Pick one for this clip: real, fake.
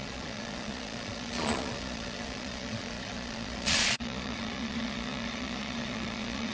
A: fake